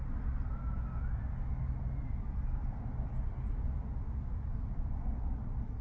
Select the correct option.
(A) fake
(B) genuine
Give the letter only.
B